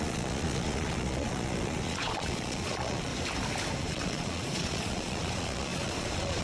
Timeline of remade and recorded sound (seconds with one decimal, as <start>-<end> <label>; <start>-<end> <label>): 0.0-3.1 remade; 3.1-3.8 recorded; 3.8-6.4 remade